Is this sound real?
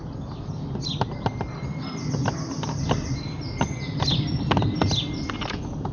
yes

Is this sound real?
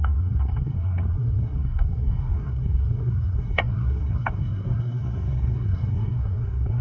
no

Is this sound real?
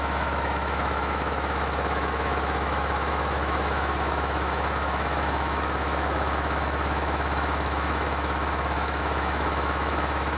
no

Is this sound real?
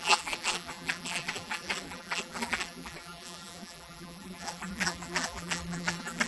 no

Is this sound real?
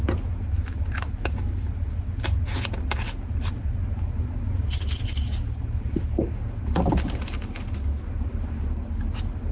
yes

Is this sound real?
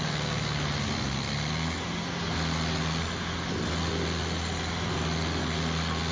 yes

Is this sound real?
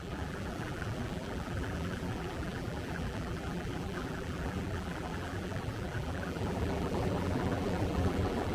no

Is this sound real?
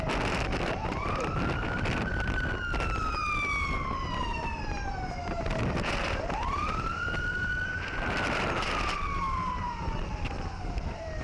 no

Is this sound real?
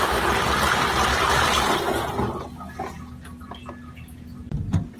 yes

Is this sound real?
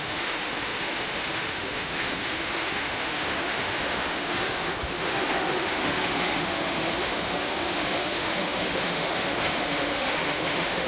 no